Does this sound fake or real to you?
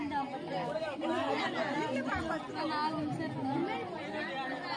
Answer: real